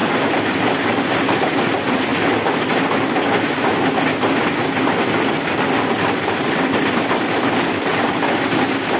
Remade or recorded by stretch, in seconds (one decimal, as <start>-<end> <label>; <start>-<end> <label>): 0.0-1.0 remade; 1.0-9.0 recorded